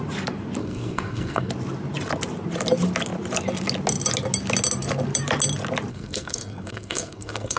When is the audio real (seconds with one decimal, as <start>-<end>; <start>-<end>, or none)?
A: 0.0-0.6; 1.5-5.9